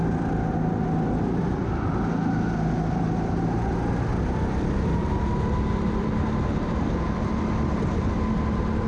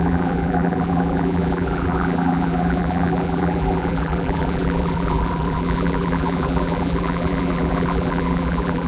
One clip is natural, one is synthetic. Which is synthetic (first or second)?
second